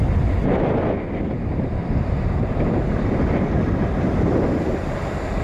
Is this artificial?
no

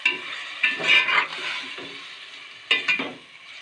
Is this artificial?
no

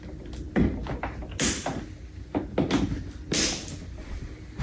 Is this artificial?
no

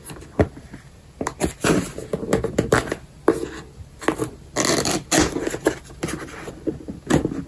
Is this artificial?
no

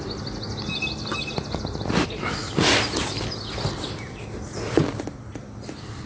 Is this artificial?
no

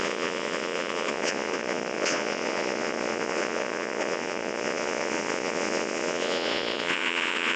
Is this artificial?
yes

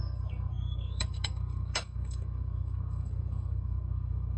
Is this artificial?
yes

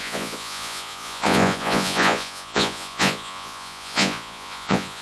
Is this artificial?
yes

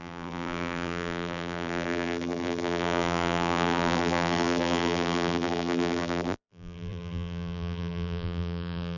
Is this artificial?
yes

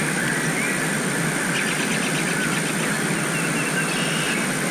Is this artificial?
no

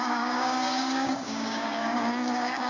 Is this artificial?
yes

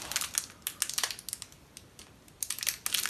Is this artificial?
no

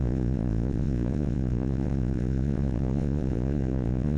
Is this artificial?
yes